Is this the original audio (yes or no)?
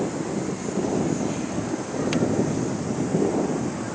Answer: yes